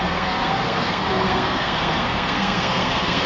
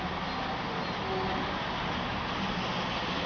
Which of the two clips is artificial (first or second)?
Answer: first